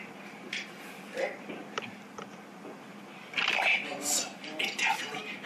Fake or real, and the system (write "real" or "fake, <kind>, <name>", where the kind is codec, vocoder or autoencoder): real